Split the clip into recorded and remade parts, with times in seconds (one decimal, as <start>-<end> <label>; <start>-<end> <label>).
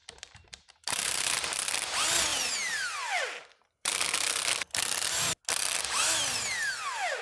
0.0-1.7 remade; 1.7-2.3 recorded; 2.3-3.9 remade; 3.9-7.2 recorded